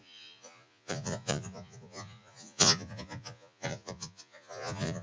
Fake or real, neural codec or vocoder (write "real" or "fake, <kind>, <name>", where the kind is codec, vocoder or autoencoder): fake, vocoder, Vocos